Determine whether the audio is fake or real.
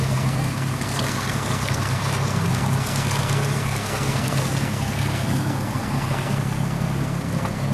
fake